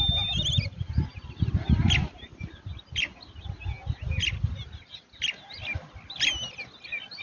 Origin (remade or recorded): recorded